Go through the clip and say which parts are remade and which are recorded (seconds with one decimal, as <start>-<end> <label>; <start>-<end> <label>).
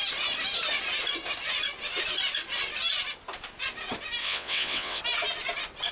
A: 0.0-4.2 recorded; 4.2-5.0 remade; 5.0-5.9 recorded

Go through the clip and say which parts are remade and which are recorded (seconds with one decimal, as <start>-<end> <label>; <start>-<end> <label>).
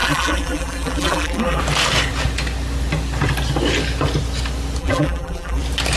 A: 0.0-1.6 remade; 1.6-4.8 recorded; 4.8-5.6 remade; 5.6-6.0 recorded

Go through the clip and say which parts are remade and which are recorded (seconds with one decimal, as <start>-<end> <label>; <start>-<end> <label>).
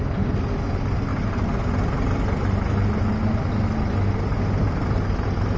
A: 0.0-5.6 recorded